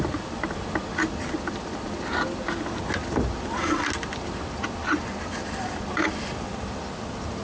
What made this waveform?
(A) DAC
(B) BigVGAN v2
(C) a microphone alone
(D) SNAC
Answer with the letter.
C